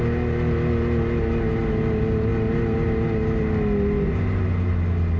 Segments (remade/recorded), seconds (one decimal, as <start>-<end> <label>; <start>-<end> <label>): 0.0-5.2 recorded